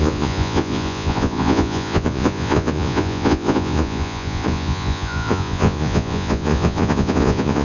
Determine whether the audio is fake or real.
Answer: fake